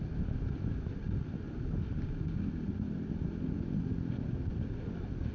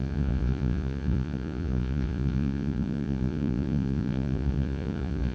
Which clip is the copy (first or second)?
second